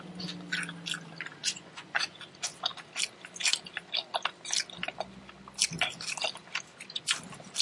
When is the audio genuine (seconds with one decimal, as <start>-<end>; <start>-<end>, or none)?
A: 0.0-1.4; 2.2-7.6